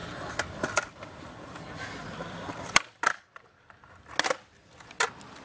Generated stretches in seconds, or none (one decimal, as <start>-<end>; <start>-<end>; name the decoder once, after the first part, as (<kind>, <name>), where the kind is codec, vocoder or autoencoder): 0.0-3.2 (vocoder, BigVGAN v2)

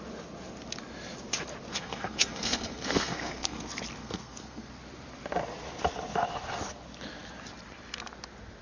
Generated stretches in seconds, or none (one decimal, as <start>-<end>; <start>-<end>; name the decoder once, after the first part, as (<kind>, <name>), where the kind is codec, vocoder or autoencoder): 1.7-3.6 (codec, SNAC); 4.0-4.7

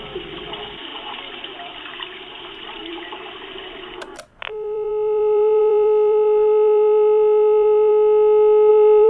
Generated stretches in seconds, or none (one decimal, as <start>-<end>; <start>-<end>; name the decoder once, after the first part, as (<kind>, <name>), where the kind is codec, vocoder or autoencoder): 0.0-0.9 (vocoder, BigVGAN v2); 1.8-7.9; 8.7-9.1

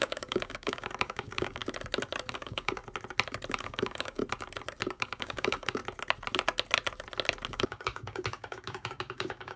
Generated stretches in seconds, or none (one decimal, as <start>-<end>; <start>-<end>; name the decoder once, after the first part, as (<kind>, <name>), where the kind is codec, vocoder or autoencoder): 0.0-1.6 (codec, DAC); 2.3-2.8; 3.5-4.2; 4.9-5.8; 7.5-9.6

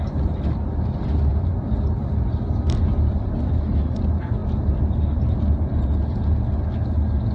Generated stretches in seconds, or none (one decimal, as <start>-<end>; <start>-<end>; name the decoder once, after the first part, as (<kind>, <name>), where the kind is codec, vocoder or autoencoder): none

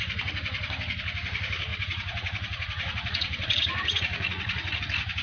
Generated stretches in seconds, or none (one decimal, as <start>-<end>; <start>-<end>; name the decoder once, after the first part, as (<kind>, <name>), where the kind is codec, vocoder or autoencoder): 1.7-4.8 (vocoder, Vocos)

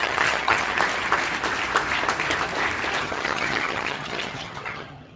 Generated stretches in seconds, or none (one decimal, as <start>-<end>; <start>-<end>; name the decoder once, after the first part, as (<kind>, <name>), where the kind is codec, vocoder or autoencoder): 0.0-0.7 (vocoder, HiFi-GAN); 3.0-5.2

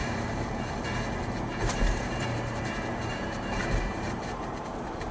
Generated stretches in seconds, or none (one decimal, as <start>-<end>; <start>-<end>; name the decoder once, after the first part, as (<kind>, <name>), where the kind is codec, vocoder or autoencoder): 0.0-0.5 (vocoder, BigVGAN v2); 1.5-4.6